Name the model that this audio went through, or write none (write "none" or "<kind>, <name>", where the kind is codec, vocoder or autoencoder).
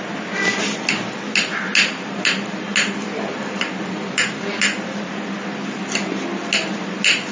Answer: none